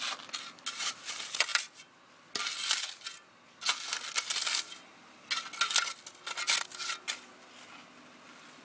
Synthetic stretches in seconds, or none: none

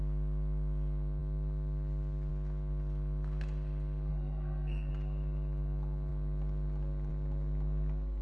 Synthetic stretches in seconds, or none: 4.1-4.9 (codec, SNAC)

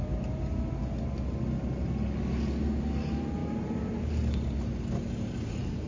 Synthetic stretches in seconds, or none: none

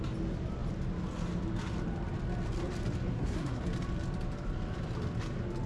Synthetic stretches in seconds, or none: 3.1-3.6 (codec, SNAC)

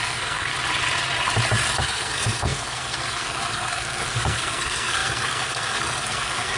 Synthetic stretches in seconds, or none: 0.0-0.5 (codec, SNAC); 1.8-6.6

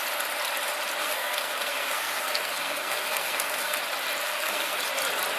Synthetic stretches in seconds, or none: 1.0-3.8 (codec, SNAC); 4.2-4.8